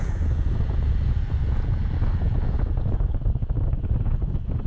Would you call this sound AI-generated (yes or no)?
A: yes